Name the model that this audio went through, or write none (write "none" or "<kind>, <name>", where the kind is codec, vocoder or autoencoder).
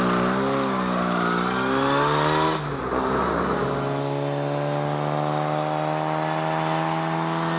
none